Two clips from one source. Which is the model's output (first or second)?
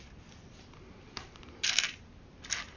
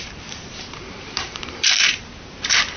second